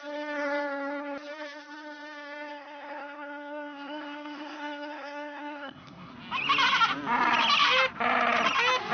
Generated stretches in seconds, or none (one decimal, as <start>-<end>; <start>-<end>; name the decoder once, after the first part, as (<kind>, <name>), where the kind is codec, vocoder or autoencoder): 2.5-6.1 (codec, SNAC)